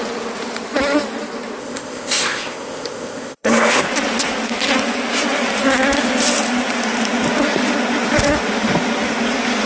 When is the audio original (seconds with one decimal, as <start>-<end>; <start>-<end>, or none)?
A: 0.0-1.6; 3.9-9.7